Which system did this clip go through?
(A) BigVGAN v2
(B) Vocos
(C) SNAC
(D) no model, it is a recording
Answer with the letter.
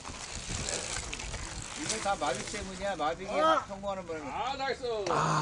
D